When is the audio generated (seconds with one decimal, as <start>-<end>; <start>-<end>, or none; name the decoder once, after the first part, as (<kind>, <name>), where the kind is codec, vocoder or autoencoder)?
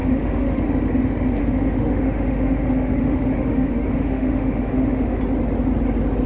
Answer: 0.0-0.6 (autoencoder, DAC-VAE); 1.4-5.2